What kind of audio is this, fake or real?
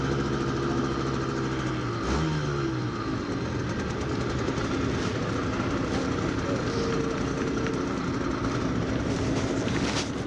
real